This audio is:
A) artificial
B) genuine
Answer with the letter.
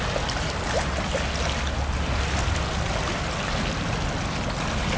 B